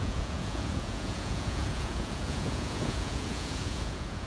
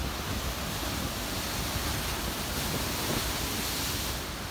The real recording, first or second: second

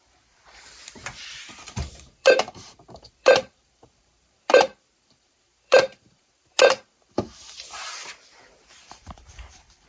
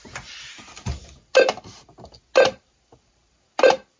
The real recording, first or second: second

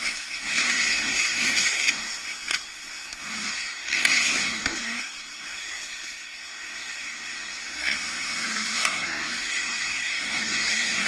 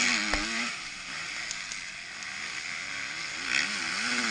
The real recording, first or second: second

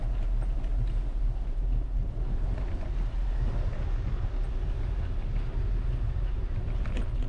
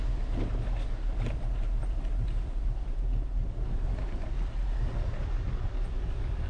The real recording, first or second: first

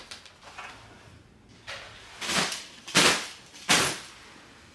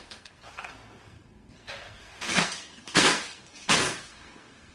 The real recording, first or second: first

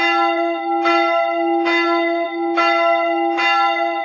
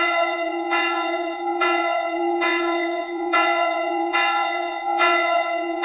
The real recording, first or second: first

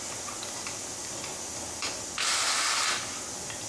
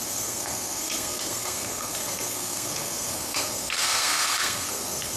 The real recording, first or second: first